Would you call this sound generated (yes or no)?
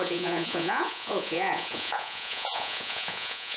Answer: yes